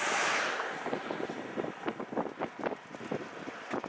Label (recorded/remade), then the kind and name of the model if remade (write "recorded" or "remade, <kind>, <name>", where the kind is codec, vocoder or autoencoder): recorded